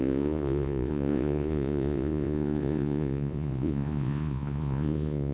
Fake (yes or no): yes